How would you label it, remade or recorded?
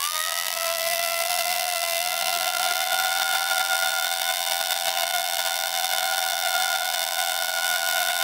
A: remade